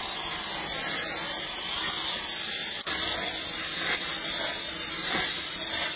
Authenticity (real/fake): real